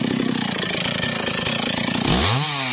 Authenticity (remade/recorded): recorded